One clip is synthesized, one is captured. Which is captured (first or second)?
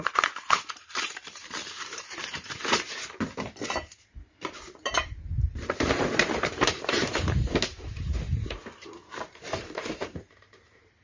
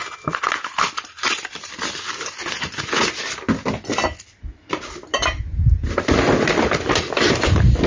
second